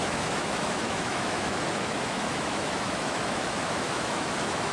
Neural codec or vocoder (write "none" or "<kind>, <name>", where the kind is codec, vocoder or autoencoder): autoencoder, DAC-VAE